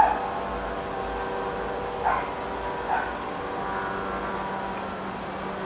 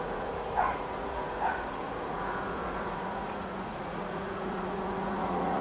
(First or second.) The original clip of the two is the first